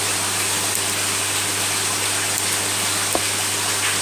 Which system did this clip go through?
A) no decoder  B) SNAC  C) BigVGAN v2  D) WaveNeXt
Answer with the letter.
A